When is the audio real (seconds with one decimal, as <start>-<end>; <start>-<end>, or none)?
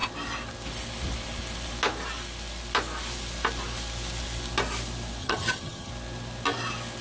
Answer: 0.0-5.2; 5.9-7.0